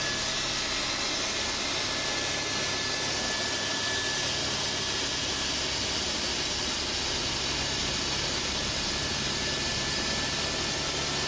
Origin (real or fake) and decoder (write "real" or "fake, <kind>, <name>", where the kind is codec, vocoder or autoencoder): real